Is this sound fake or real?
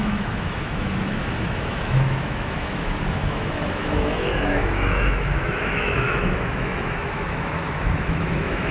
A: fake